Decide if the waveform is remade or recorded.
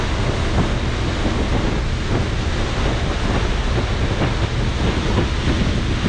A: recorded